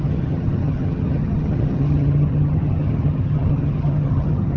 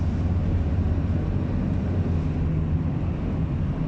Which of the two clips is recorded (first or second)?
second